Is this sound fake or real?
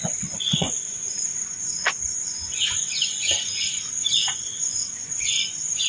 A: fake